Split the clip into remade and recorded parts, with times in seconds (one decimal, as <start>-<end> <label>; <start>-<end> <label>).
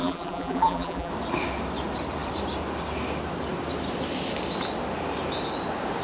0.0-1.1 remade; 1.1-6.0 recorded